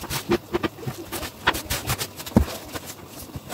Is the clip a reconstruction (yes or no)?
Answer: yes